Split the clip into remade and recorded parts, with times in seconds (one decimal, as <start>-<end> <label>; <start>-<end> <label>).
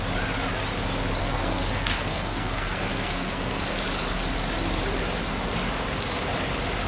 0.0-1.2 recorded; 1.2-3.6 remade; 3.6-6.9 recorded